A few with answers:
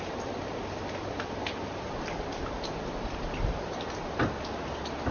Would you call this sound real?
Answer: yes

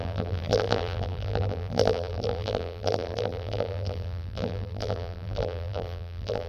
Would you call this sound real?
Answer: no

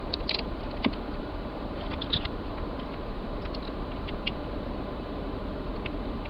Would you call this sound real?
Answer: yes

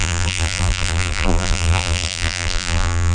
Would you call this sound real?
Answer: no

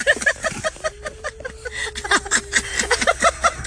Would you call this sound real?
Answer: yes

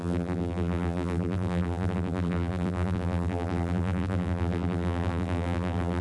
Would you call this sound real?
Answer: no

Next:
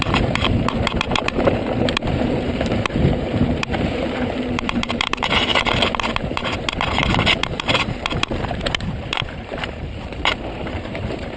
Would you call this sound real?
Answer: no